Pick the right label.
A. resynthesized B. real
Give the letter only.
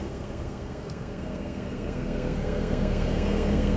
A